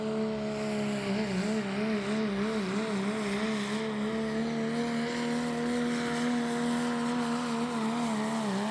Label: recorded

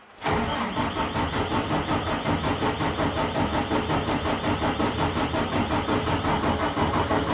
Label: recorded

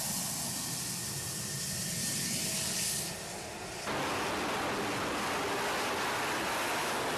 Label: recorded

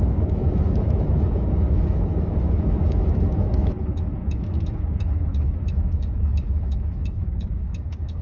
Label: remade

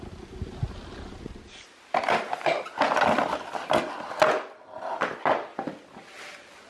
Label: recorded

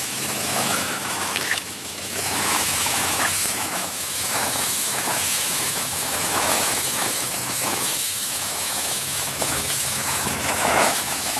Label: remade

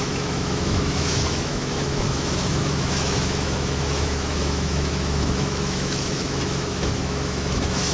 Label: remade